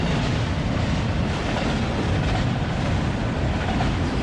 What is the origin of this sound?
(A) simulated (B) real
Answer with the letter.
B